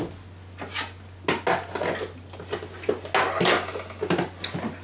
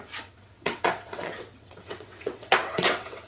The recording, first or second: first